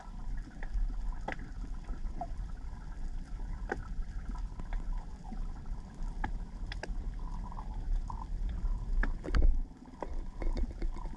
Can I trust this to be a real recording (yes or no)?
no